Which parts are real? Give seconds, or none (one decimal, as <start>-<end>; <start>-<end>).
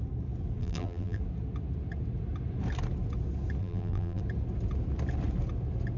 0.0-0.6; 1.2-3.6; 4.2-6.0